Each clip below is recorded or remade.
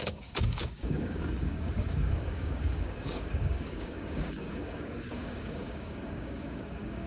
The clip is remade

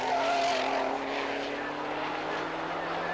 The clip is recorded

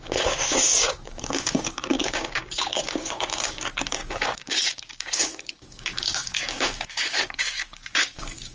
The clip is remade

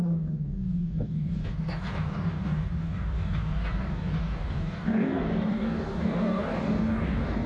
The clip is remade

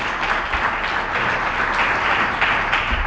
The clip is recorded